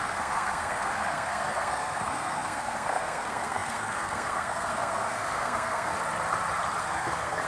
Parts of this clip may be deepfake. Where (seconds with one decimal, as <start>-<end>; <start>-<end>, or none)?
0.0-5.9; 6.8-7.5